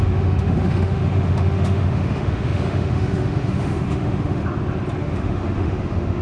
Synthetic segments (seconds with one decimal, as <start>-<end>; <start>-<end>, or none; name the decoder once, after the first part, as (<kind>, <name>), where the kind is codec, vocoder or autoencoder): 0.0-4.4 (autoencoder, DAC-VAE); 5.0-6.2